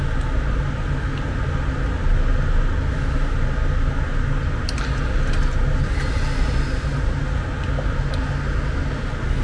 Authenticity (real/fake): real